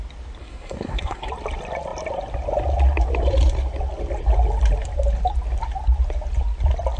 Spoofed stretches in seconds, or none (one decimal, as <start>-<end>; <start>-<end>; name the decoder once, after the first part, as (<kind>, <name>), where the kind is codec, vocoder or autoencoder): 0.4-1.3 (codec, SNAC)